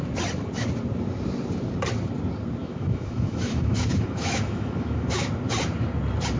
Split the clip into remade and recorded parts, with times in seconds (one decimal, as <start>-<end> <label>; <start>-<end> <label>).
0.0-2.6 recorded; 2.6-5.3 remade; 5.3-6.4 recorded